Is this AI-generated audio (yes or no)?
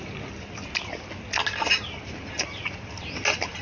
no